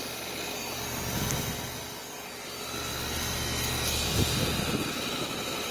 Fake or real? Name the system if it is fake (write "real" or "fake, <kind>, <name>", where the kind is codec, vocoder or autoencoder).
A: real